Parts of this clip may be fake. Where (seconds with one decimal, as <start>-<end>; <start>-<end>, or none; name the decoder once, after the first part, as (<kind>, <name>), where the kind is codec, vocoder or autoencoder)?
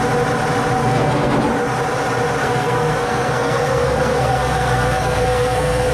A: 0.8-1.3 (codec, SNAC); 2.4-5.9